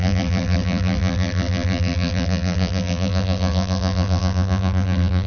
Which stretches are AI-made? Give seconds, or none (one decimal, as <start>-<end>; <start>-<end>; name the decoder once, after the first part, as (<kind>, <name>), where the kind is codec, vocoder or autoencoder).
0.0-5.3 (vocoder, BigVGAN v2)